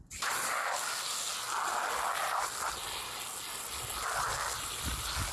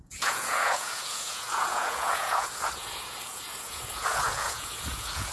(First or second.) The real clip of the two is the first